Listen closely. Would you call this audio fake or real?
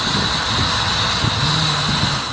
real